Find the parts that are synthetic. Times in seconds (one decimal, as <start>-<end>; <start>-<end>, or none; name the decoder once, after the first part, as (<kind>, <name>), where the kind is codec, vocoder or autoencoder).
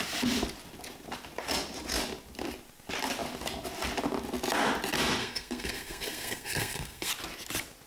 5.2-7.1 (codec, SNAC)